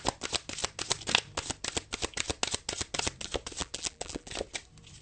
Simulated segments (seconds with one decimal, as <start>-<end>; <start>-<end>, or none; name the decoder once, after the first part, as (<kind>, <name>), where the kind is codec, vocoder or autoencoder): 3.6-4.3 (vocoder, BigVGAN v2)